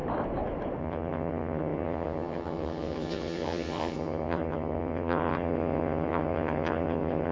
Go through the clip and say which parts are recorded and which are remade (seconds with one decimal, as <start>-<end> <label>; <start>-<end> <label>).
0.0-0.8 recorded; 0.8-7.3 remade